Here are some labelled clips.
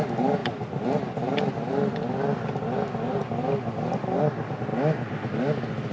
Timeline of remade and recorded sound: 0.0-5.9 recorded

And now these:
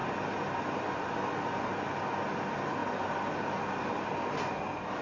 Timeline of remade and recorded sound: 0.0-5.0 recorded

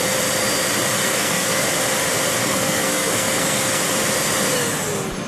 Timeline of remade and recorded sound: 0.0-1.0 recorded; 1.0-1.6 remade; 1.6-2.4 recorded; 2.4-3.8 remade; 3.8-5.3 recorded

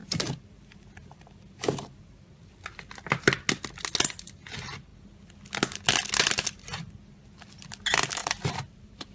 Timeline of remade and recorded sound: 0.0-2.0 remade; 2.0-8.2 recorded; 8.2-9.1 remade

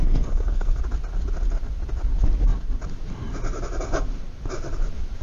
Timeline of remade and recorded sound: 0.0-0.8 remade; 0.8-5.2 recorded

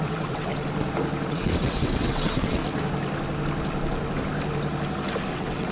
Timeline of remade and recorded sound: 0.0-0.5 remade; 0.5-1.3 recorded; 1.3-2.6 remade; 2.6-5.3 recorded; 5.3-5.7 remade

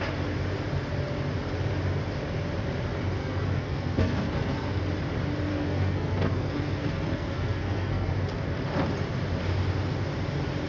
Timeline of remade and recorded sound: 0.0-3.2 recorded; 3.2-4.8 remade; 4.8-5.5 recorded; 5.5-8.1 remade; 8.1-10.7 recorded

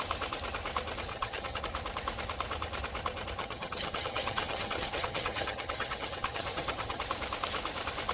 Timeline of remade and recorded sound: 0.0-1.1 recorded; 1.1-1.6 remade; 1.6-3.4 recorded; 3.4-7.0 remade; 7.0-8.1 recorded